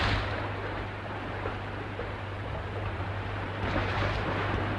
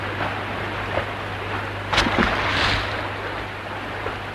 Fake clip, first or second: first